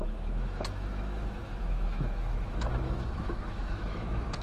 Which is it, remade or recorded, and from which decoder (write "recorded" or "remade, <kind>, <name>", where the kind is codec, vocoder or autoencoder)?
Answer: remade, autoencoder, DAC-VAE